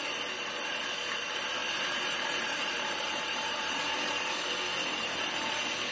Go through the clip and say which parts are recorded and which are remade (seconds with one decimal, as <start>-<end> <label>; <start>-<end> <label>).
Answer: 0.0-1.6 recorded; 1.6-3.8 remade; 3.8-5.9 recorded